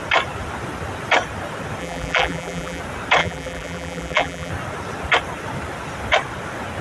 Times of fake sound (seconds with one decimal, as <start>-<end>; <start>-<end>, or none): 1.8-2.8; 3.2-4.5

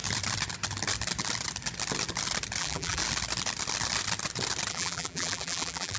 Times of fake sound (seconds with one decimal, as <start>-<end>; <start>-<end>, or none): 2.6-3.0; 4.7-6.0

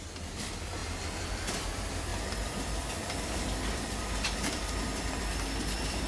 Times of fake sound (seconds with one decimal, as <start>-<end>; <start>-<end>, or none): 0.0-0.8; 1.3-6.1